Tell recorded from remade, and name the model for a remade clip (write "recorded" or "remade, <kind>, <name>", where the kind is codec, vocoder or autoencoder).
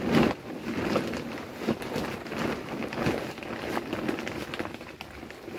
recorded